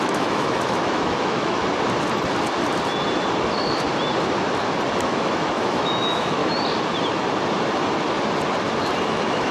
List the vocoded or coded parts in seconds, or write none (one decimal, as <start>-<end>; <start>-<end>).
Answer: 0.0-1.6; 5.0-6.4; 9.1-9.5